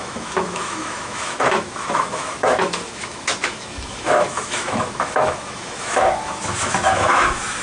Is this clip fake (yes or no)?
yes